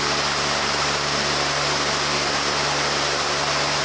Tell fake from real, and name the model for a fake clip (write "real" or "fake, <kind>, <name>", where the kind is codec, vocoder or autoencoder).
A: real